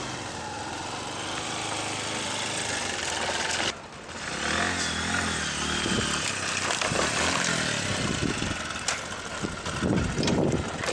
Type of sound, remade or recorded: recorded